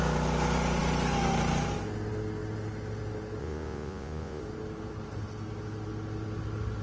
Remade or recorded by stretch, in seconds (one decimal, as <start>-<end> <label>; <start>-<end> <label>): 0.0-3.4 recorded; 3.4-4.4 remade; 4.4-6.8 recorded

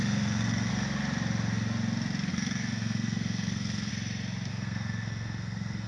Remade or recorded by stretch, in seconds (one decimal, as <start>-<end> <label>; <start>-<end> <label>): 0.0-0.7 remade; 0.7-2.3 recorded; 2.3-3.9 remade; 3.9-4.5 recorded; 4.5-5.9 remade

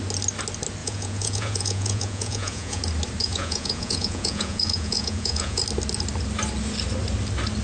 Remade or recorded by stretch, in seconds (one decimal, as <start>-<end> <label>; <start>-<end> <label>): 0.0-0.8 recorded; 0.8-2.8 remade; 2.8-3.2 recorded; 3.2-5.6 remade; 5.6-7.6 recorded

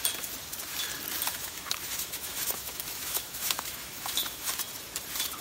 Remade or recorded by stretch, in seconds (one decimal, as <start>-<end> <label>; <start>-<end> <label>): 0.0-1.3 recorded; 1.3-4.5 remade; 4.5-5.4 recorded